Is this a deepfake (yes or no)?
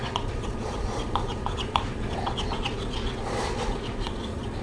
yes